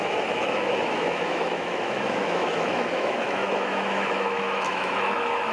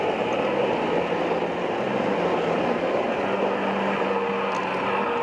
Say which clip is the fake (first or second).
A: first